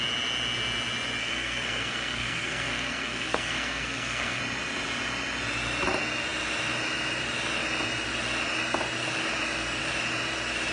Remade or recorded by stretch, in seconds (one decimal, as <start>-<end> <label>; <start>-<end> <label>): 0.0-1.2 recorded; 1.2-4.4 remade; 4.4-10.7 recorded